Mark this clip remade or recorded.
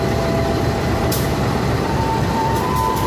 remade